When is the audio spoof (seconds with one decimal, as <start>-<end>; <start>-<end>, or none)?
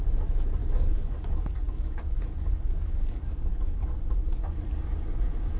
0.6-4.0